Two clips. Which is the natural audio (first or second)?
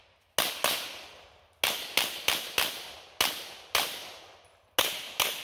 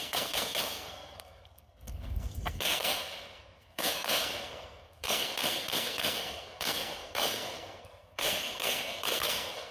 first